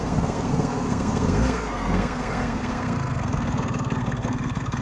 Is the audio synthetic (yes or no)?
yes